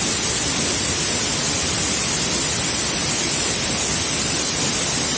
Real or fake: real